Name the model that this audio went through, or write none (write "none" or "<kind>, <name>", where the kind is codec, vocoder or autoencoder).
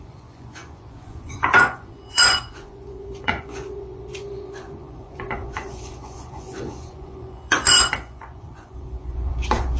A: vocoder, Vocos